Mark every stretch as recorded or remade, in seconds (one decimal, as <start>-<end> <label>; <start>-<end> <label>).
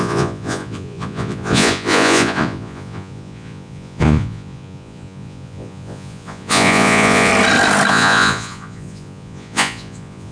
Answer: 0.0-7.3 remade; 7.3-7.9 recorded; 7.9-10.3 remade